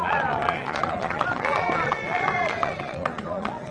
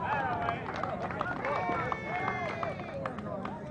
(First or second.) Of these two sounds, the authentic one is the second